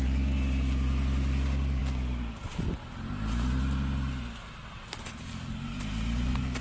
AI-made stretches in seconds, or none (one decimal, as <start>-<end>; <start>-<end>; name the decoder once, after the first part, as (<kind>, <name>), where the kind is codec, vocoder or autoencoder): none